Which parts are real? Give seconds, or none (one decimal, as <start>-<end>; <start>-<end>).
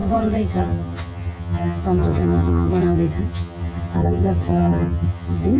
none